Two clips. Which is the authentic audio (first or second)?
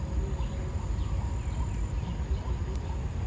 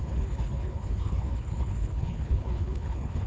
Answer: first